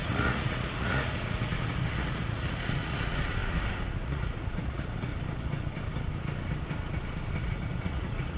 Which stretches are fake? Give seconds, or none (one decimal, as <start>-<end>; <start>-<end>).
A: 0.0-5.1; 7.4-8.4